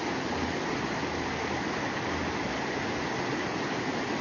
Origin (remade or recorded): recorded